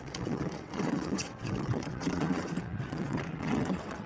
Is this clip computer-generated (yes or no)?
yes